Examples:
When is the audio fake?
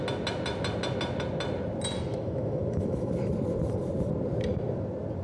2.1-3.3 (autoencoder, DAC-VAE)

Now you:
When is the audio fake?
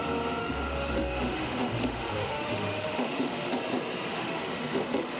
0.4-3.5 (autoencoder, DAC-VAE); 4.1-5.2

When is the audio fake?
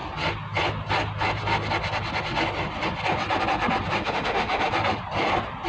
4.0-4.7 (autoencoder, DAC-VAE)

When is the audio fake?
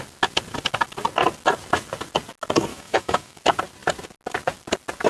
2.7-3.4 (autoencoder, DAC-VAE)